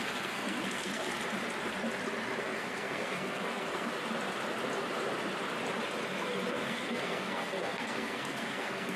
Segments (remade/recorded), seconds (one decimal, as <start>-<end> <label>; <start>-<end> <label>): 0.0-1.1 remade; 1.1-2.4 recorded; 2.4-3.9 remade; 3.9-6.5 recorded; 6.5-9.0 remade